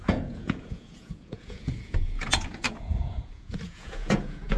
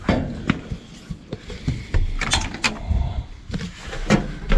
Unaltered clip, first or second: second